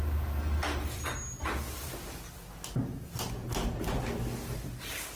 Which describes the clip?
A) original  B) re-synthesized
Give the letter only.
A